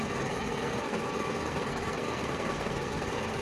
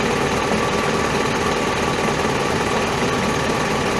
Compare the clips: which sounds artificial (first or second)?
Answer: first